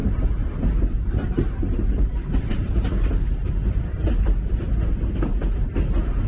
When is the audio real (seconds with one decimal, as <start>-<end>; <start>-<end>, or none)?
2.4-6.3